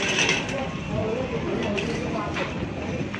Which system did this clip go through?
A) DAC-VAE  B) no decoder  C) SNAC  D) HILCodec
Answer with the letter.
B